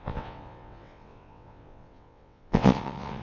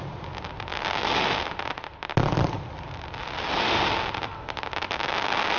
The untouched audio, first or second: second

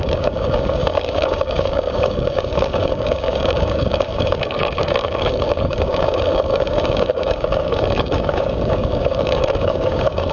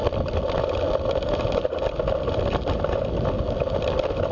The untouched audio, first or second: second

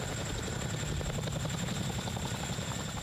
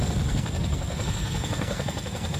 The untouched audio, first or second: first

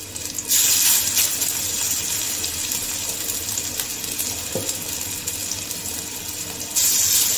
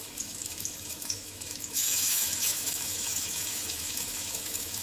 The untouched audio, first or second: first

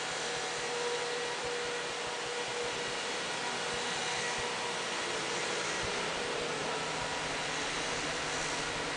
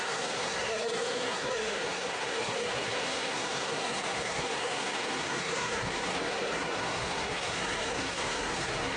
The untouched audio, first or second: first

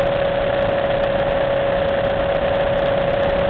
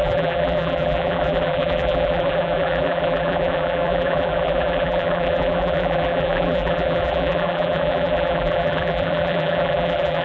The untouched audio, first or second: first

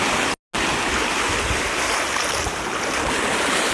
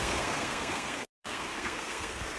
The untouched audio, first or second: first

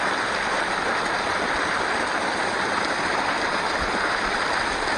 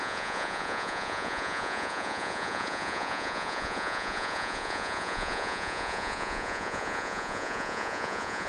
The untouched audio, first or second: first